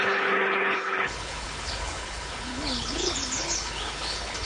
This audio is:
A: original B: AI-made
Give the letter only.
B